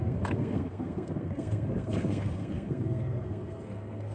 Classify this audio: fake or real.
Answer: fake